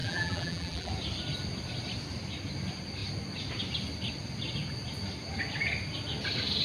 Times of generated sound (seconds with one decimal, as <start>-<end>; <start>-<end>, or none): 0.0-0.9